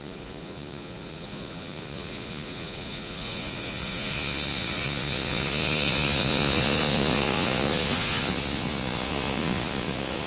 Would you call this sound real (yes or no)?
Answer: no